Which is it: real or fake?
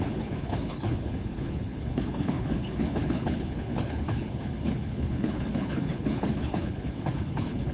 fake